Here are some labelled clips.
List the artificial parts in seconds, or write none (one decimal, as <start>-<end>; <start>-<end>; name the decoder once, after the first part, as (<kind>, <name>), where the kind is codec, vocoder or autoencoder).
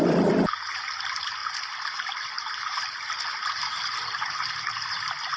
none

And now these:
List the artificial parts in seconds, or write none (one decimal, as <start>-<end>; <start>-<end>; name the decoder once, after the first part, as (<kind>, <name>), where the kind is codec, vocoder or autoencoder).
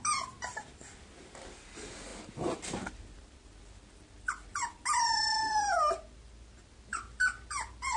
none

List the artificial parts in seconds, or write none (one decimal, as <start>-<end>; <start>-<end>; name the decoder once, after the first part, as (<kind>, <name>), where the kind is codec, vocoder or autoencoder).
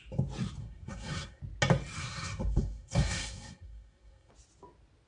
0.6-1.4 (codec, SNAC); 2.0-4.3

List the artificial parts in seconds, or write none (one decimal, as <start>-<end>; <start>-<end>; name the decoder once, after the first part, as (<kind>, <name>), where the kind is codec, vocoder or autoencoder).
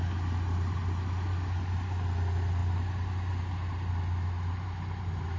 none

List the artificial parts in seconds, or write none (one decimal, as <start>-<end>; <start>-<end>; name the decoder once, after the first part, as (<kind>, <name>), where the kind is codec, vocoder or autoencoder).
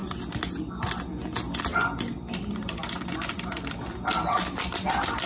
1.7-5.3 (vocoder, BigVGAN v2)